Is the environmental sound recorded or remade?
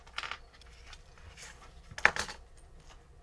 recorded